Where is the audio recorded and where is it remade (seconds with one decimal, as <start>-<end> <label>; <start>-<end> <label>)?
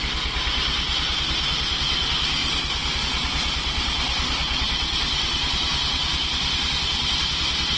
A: 0.0-7.8 recorded